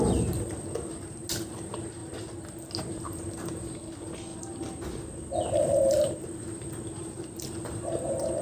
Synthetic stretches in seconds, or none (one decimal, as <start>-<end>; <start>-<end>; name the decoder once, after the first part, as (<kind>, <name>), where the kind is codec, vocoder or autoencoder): none